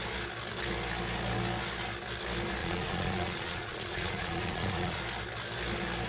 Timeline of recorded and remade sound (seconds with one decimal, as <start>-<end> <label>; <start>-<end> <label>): 0.0-2.6 recorded; 2.6-5.0 remade; 5.0-6.1 recorded